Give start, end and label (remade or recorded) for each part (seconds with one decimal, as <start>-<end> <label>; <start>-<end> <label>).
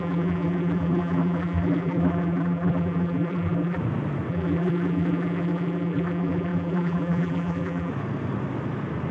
0.0-3.8 remade; 3.8-4.3 recorded; 4.3-7.9 remade; 7.9-9.1 recorded